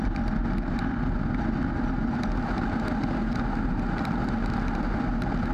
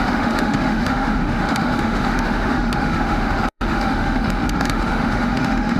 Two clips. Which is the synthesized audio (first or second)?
second